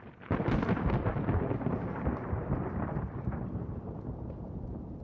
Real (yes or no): yes